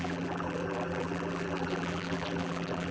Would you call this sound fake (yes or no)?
yes